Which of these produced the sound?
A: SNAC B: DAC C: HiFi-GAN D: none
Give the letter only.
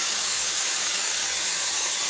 B